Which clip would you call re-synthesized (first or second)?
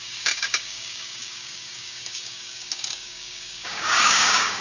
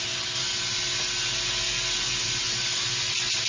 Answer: first